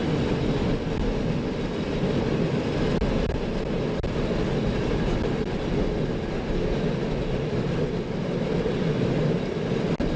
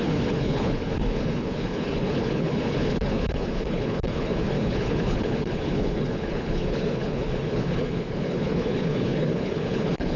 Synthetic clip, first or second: second